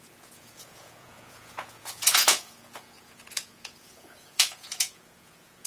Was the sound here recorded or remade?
remade